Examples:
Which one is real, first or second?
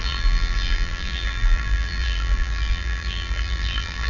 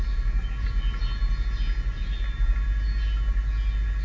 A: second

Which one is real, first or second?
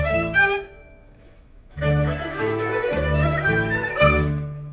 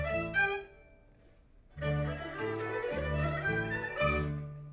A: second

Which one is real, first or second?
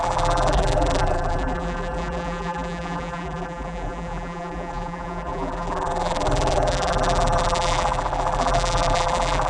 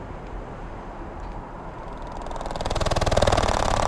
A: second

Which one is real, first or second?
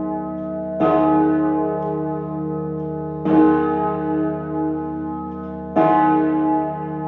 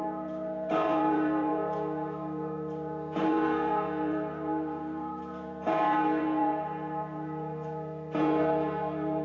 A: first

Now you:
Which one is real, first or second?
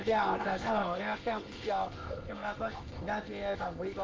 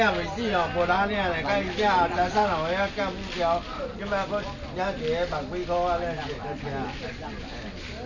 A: second